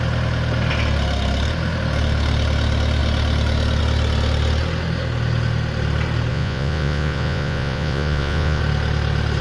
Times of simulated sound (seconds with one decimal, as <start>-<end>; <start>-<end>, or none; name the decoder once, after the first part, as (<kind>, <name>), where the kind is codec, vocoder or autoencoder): 6.3-8.6 (vocoder, Vocos)

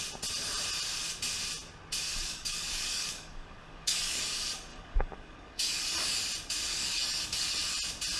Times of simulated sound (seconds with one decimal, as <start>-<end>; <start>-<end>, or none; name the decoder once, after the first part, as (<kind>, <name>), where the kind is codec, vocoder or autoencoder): 2.1-4.2 (codec, DAC); 4.7-5.9; 6.7-7.6

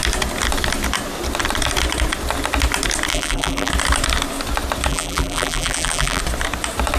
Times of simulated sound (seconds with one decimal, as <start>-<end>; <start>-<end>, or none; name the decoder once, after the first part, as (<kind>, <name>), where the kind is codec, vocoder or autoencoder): 3.1-3.7 (vocoder, BigVGAN v2); 4.9-6.2

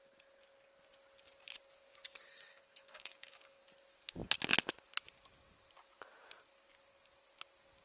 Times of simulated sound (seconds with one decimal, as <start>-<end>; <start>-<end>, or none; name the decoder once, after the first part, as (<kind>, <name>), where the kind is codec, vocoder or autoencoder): 2.3-3.6 (codec, DAC)

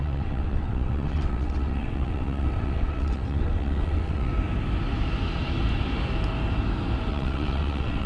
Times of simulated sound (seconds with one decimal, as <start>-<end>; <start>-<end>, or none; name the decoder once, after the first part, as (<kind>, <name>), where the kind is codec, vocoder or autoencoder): 0.0-4.3 (vocoder, WaveNeXt); 7.1-8.1

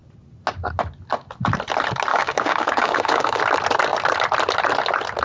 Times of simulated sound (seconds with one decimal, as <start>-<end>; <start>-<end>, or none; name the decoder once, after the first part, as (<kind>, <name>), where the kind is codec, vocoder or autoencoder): 2.1-3.4 (codec, DAC)